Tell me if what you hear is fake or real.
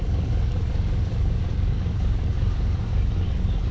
fake